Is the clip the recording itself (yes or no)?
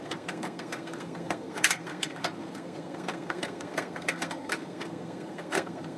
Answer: no